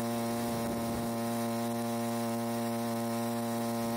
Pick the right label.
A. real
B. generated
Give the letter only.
A